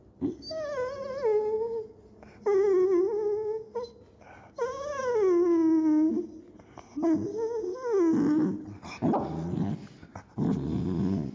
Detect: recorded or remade recorded